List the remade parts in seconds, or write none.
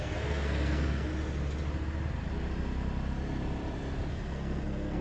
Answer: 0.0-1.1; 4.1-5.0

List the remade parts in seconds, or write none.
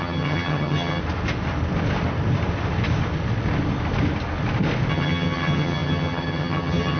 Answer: 0.0-1.0; 4.9-7.0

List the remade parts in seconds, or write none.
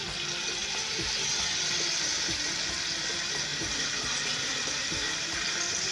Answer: 0.6-1.7; 3.5-5.9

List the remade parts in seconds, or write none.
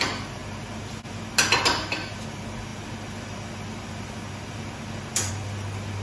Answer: none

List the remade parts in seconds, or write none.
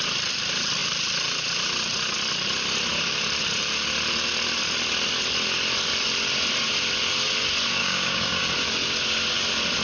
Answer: 7.8-8.4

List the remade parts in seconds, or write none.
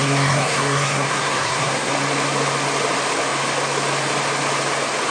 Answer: 0.0-1.9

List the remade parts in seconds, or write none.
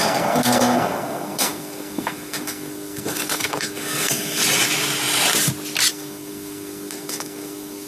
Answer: 0.0-4.4; 5.9-7.9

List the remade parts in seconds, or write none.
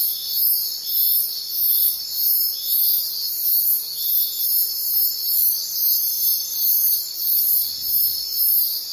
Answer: 0.0-2.9; 4.4-8.9